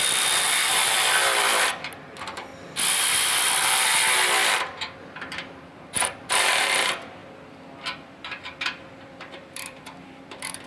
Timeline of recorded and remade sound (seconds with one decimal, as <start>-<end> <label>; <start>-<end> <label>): 0.0-2.5 remade; 2.5-4.5 recorded; 4.5-10.7 remade